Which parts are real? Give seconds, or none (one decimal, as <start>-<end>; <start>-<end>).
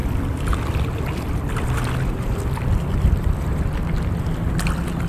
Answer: 0.0-5.1